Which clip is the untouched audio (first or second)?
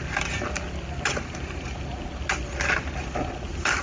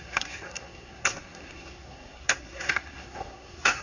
first